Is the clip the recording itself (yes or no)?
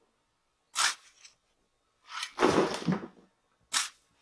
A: yes